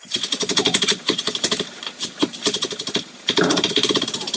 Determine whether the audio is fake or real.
fake